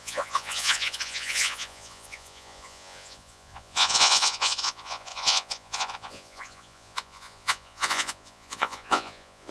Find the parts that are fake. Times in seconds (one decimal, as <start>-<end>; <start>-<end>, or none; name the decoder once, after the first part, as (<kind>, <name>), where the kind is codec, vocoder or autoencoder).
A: 0.0-9.5 (vocoder, Vocos)